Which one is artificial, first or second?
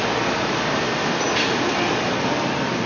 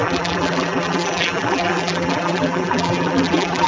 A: second